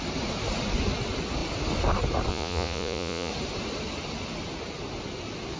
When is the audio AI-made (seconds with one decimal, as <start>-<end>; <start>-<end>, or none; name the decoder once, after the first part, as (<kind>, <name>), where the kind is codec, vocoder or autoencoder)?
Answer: 2.3-3.3 (vocoder, Vocos)